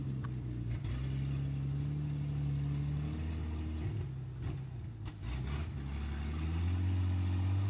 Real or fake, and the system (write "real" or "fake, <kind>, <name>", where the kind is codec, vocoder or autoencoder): real